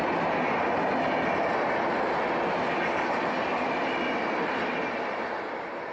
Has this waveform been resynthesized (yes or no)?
no